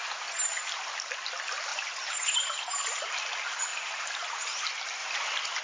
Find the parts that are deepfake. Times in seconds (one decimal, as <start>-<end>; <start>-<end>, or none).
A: 1.7-2.4; 3.7-4.6